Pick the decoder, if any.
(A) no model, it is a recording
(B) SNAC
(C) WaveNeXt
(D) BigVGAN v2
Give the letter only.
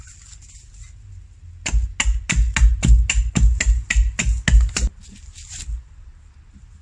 A